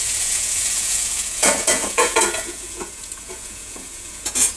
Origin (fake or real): fake